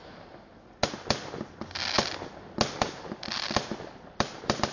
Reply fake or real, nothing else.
real